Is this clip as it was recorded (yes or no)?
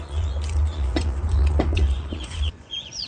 no